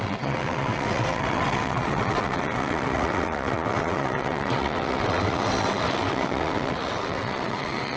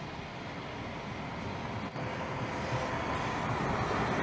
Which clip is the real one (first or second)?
second